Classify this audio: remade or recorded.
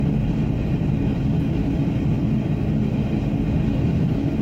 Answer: recorded